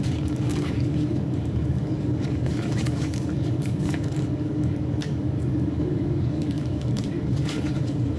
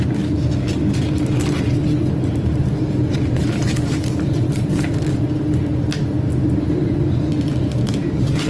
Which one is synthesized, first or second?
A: first